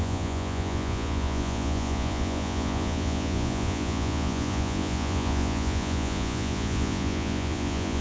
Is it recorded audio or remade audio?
remade